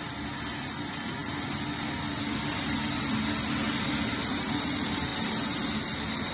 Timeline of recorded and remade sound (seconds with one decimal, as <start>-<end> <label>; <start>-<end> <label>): 0.0-6.3 recorded